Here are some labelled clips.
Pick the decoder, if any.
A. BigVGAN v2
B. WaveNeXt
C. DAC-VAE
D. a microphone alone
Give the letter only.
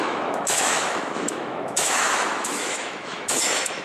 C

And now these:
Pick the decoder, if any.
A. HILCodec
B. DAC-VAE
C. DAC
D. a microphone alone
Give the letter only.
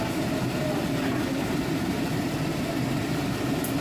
D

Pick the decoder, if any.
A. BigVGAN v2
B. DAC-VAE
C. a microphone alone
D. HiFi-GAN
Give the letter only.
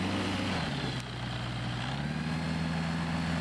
C